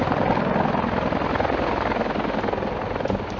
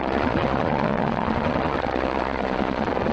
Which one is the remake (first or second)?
second